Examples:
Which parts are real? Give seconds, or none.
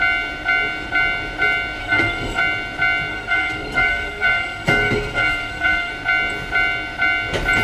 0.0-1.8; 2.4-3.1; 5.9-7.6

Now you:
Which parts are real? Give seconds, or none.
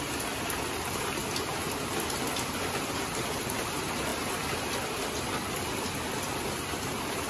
0.0-7.3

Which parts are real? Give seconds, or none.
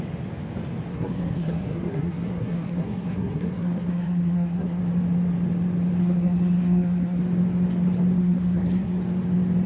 0.0-0.9; 4.8-6.0; 7.2-8.2; 9.0-9.7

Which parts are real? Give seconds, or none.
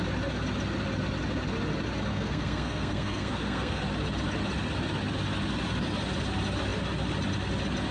0.0-2.1; 3.8-7.9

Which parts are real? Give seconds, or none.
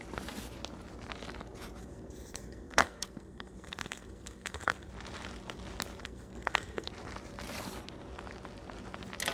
0.0-1.8; 4.9-6.0; 6.9-9.3